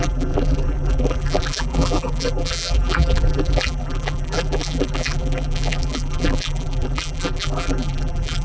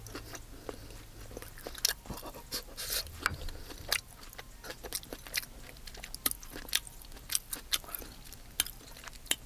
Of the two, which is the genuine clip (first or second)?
second